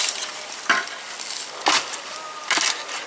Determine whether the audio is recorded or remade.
recorded